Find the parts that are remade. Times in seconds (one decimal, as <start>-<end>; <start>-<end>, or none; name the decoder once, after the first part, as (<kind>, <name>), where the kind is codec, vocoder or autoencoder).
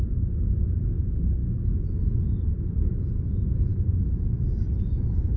3.7-4.2 (codec, DAC)